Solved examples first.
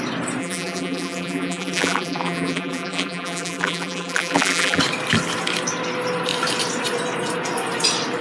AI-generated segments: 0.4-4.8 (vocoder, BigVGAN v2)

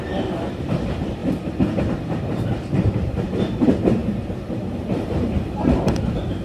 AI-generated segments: 0.0-6.4 (vocoder, BigVGAN v2)

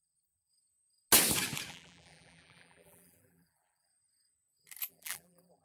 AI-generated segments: 0.0-0.5 (vocoder, BigVGAN v2); 1.7-3.9; 4.9-5.6

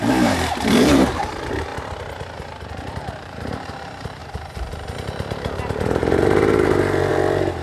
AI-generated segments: 0.0-1.7 (vocoder, BigVGAN v2); 2.4-7.6

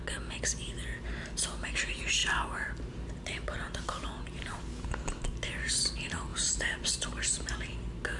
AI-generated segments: 6.3-6.9 (vocoder, BigVGAN v2)

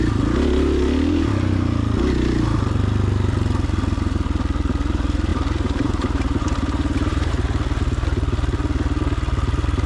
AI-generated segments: 5.3-7.3 (vocoder, BigVGAN v2)

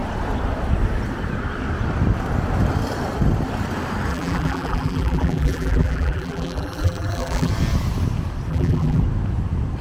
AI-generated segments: 4.1-7.5 (vocoder, BigVGAN v2); 8.5-9.0

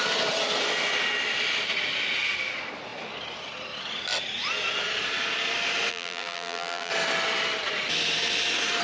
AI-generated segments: 5.9-6.9 (vocoder, BigVGAN v2)